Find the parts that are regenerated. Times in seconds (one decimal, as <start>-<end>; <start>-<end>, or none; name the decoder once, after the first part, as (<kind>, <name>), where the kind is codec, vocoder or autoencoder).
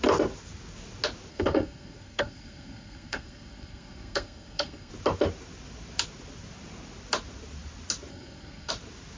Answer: 1.3-4.9 (codec, SNAC); 8.1-8.7